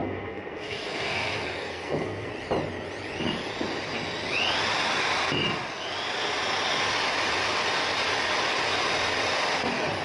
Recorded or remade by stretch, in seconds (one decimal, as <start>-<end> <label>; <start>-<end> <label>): 0.0-2.3 remade; 2.3-10.0 recorded